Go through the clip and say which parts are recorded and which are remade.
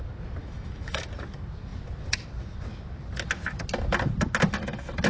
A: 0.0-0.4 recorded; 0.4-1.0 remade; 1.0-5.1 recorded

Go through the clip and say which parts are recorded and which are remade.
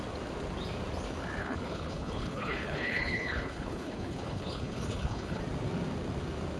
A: 0.0-1.4 recorded; 1.4-5.4 remade; 5.4-6.6 recorded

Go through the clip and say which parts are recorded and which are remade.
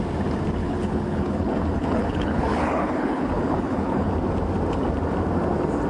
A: 0.0-0.6 recorded; 0.6-4.1 remade; 4.1-5.9 recorded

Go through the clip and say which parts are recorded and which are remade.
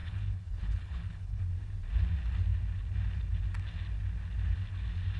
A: 0.0-1.4 remade; 1.4-5.2 recorded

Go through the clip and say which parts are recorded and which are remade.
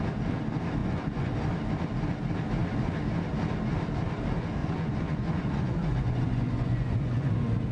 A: 0.0-0.8 recorded; 0.8-1.3 remade; 1.3-4.6 recorded; 4.6-7.3 remade; 7.3-7.7 recorded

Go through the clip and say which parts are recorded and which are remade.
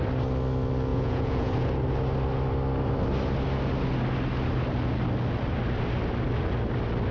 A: 0.0-0.9 recorded; 0.9-1.7 remade; 1.7-7.1 recorded